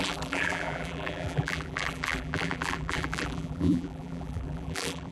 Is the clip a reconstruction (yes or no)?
yes